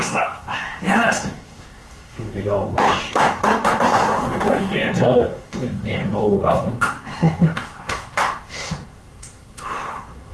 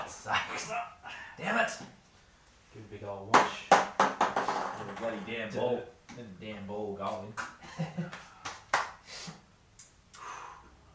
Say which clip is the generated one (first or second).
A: first